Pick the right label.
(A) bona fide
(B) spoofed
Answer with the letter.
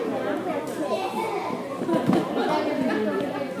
A